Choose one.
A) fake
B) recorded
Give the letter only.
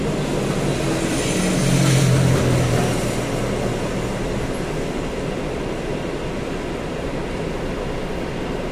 B